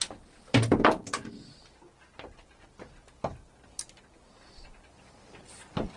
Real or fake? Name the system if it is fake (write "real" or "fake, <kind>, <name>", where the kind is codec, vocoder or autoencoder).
real